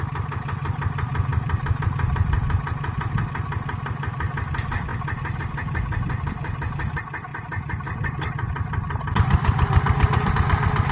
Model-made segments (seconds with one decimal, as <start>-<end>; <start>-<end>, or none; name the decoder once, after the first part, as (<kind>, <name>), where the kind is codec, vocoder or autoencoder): 1.3-1.8 (vocoder, BigVGAN v2); 4.9-5.4; 7.3-10.3